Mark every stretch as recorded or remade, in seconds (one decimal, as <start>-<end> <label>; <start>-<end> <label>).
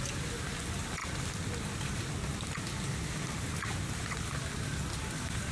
0.0-1.0 recorded; 1.0-4.3 remade; 4.3-5.5 recorded